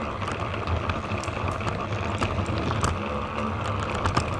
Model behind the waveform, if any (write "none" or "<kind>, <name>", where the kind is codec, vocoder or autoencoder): none